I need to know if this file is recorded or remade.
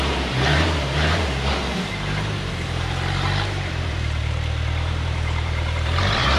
remade